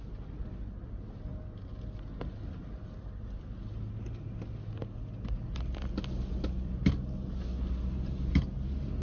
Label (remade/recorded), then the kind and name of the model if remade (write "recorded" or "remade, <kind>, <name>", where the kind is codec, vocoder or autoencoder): recorded